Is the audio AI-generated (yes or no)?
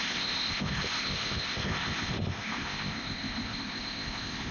yes